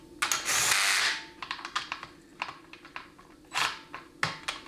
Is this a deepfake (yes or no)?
no